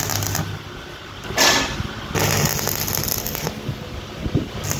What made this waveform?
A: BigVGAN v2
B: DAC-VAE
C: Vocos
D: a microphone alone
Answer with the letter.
D